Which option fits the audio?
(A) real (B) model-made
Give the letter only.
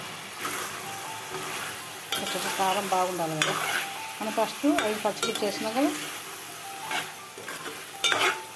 A